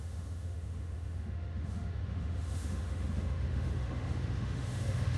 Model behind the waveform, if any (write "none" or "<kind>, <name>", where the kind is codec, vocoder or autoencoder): autoencoder, DAC-VAE